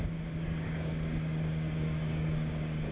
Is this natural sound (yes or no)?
no